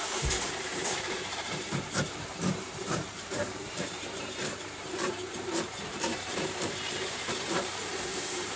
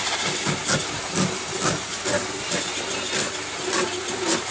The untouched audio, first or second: second